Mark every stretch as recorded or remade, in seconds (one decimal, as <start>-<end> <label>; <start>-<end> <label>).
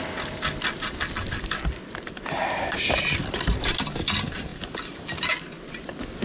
0.0-6.2 recorded